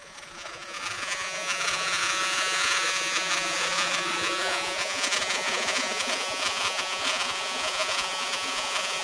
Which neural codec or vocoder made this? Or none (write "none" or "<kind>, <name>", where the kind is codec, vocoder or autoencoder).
vocoder, Vocos